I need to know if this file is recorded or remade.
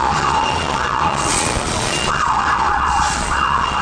remade